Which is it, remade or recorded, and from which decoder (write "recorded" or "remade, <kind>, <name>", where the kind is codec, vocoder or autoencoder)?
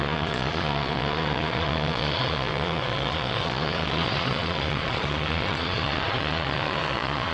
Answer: remade, vocoder, Vocos